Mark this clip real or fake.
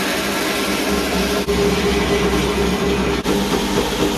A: real